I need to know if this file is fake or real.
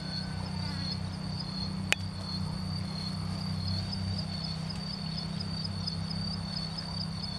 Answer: real